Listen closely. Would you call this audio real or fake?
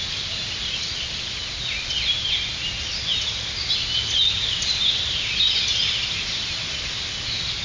real